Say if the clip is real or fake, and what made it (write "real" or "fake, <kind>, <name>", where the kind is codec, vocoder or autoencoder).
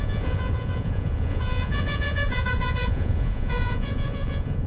fake, vocoder, Vocos